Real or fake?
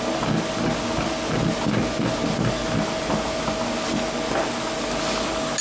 real